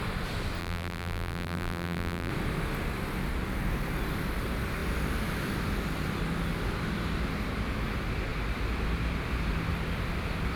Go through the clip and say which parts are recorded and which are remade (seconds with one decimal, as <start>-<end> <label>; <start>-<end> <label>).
0.0-0.6 recorded; 0.6-2.3 remade; 2.3-10.6 recorded